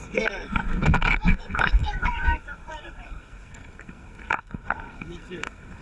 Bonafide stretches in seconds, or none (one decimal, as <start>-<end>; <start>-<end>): none